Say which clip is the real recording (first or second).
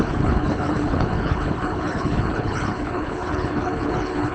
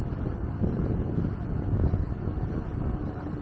second